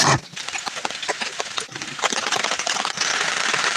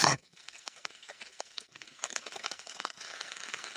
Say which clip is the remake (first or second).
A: second